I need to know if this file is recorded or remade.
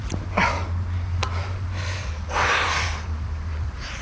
recorded